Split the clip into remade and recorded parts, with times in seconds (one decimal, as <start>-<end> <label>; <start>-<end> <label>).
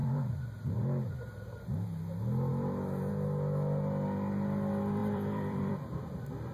0.0-1.6 remade; 1.6-5.0 recorded; 5.0-6.0 remade; 6.0-6.5 recorded